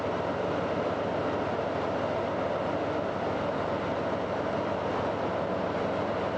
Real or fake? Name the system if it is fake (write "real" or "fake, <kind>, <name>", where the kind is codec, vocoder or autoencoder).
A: real